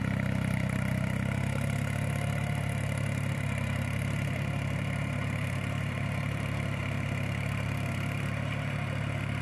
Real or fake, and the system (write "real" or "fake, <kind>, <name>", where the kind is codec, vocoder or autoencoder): fake, vocoder, BigVGAN v2